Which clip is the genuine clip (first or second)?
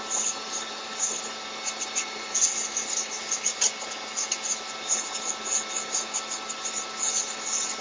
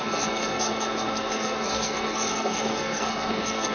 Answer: first